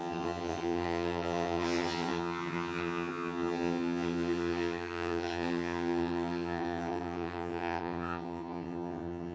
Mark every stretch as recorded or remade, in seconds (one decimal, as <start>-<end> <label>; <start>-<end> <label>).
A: 0.0-9.3 remade